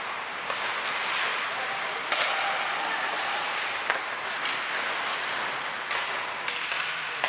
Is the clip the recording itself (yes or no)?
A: yes